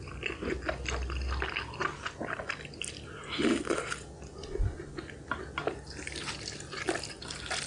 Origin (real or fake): real